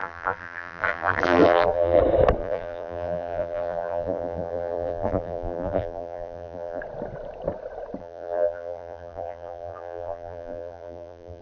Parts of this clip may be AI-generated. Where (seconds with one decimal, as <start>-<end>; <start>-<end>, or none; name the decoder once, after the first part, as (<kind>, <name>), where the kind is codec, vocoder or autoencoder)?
0.0-2.0 (vocoder, BigVGAN v2); 2.4-6.8; 8.0-11.4